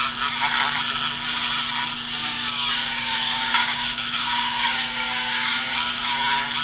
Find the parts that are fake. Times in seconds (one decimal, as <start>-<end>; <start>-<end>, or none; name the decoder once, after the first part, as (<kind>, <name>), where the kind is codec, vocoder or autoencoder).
2.2-6.1 (codec, DAC)